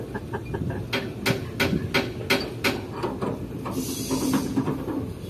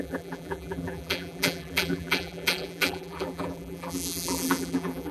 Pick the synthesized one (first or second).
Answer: second